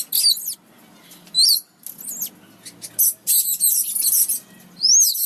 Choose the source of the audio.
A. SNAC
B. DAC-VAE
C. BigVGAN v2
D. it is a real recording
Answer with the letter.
D